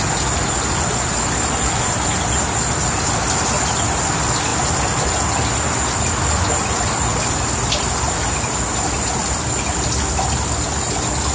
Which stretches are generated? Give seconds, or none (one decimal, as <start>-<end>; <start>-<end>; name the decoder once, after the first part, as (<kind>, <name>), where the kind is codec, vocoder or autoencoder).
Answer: none

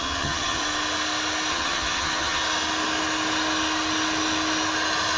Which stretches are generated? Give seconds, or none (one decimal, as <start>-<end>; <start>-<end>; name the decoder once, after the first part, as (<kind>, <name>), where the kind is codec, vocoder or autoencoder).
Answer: 0.0-0.6 (vocoder, HiFi-GAN); 1.5-2.4

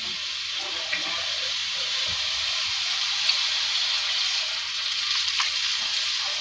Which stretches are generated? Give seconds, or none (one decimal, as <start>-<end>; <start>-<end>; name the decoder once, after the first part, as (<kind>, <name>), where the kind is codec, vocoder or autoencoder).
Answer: 1.6-5.4 (vocoder, BigVGAN v2)

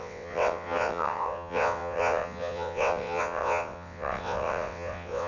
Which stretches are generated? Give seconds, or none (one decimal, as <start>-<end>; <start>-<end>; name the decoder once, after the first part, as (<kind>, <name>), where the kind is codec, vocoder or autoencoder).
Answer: 0.0-5.3 (vocoder, WaveNeXt)

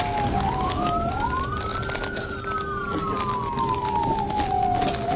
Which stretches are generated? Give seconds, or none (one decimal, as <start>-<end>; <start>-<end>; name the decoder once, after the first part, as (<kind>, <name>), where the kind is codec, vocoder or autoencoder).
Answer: none

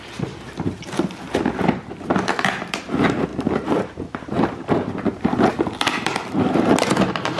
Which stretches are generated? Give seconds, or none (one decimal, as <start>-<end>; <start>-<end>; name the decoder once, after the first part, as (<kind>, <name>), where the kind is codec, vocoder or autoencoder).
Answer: 3.3-5.5 (vocoder, BigVGAN v2)

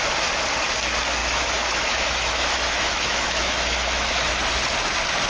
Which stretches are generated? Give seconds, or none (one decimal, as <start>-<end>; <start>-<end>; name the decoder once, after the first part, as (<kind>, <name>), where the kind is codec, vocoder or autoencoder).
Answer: 1.2-4.4 (autoencoder, DAC-VAE)

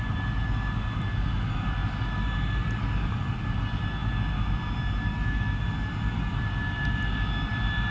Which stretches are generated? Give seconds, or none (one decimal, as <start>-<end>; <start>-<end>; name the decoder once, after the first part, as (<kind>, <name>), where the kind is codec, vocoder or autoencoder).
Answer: 5.1-5.6 (autoencoder, DAC-VAE)